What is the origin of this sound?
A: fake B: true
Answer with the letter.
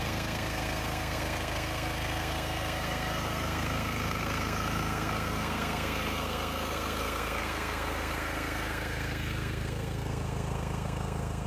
A